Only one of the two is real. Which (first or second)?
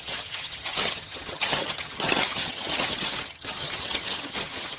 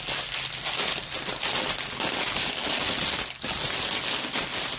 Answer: second